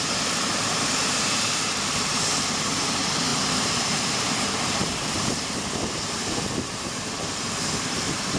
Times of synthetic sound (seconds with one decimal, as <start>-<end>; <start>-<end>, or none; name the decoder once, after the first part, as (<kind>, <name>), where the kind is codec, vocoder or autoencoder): 0.0-8.4 (vocoder, BigVGAN v2)